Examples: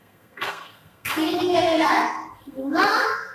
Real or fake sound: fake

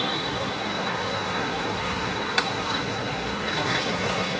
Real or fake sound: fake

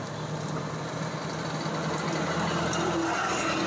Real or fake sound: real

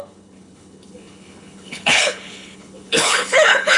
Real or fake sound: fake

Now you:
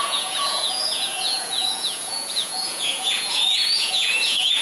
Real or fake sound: fake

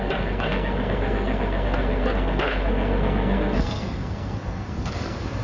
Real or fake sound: fake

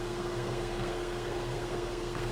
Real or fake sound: fake